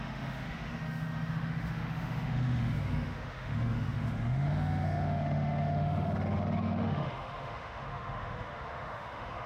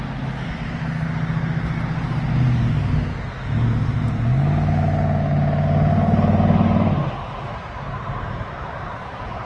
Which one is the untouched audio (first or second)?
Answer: second